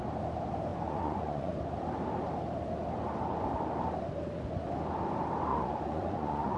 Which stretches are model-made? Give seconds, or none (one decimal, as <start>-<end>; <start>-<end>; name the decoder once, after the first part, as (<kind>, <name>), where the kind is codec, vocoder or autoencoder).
0.7-1.5 (vocoder, Vocos); 5.5-6.6

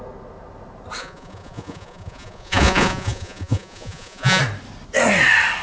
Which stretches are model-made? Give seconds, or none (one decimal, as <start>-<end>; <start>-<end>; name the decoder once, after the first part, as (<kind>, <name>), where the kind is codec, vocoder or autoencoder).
1.0-4.4 (vocoder, Vocos)

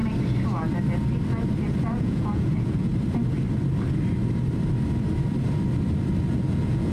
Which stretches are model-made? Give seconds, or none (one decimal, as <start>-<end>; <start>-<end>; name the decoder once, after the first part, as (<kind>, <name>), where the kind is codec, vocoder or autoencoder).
2.0-2.9 (vocoder, Vocos); 6.3-6.9